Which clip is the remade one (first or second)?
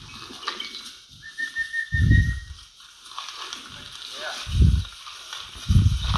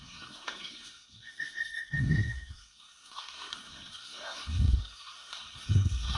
second